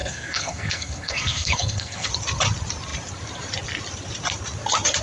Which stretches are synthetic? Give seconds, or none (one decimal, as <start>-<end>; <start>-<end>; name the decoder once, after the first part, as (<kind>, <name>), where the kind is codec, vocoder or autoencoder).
0.0-2.1 (codec, SNAC)